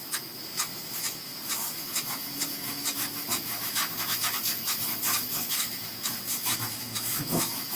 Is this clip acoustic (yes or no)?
no